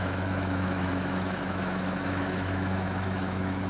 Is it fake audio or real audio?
fake